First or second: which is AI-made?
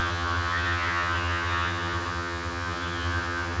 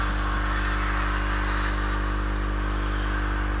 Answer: first